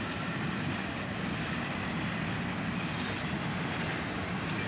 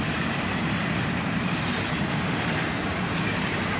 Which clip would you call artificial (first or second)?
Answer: second